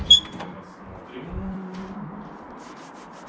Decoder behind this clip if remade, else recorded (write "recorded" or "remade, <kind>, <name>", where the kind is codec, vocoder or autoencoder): remade, vocoder, BigVGAN v2